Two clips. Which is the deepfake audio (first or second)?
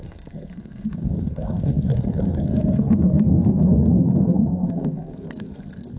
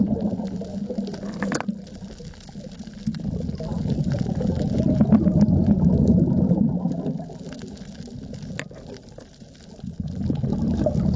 first